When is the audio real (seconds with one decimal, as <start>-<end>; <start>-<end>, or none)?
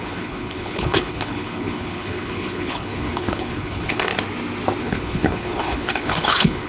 4.1-4.8